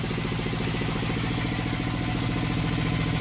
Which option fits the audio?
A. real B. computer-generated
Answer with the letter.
A